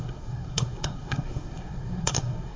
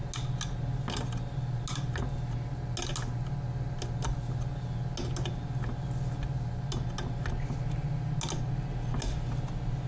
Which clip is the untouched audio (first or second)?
second